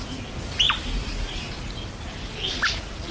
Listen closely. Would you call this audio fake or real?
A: real